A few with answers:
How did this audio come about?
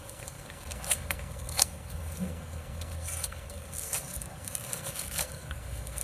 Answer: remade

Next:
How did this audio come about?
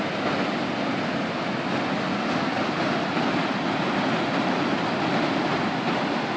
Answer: recorded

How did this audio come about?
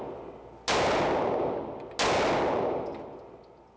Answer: recorded